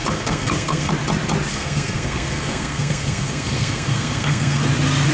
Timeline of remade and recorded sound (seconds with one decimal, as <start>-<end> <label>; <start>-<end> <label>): 0.0-0.9 remade; 0.9-1.5 recorded; 1.5-4.6 remade; 4.6-5.1 recorded